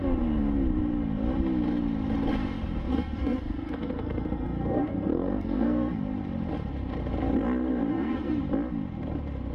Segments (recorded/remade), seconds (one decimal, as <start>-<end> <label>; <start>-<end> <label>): 0.0-2.9 recorded; 2.9-6.0 remade; 6.0-7.9 recorded; 7.9-8.4 remade; 8.4-9.5 recorded